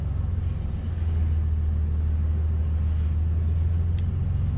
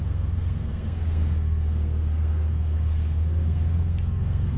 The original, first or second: first